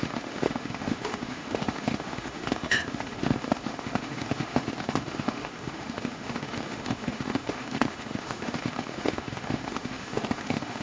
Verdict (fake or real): fake